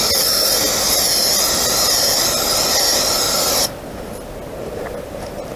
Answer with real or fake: real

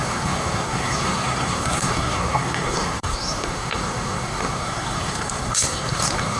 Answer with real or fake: fake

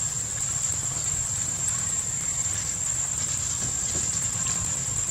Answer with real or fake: real